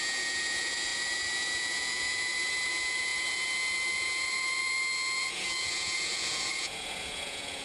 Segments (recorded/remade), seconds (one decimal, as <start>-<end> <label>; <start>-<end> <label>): 0.0-7.6 remade